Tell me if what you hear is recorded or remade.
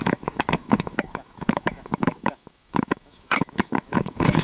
remade